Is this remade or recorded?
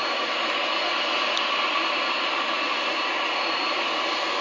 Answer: recorded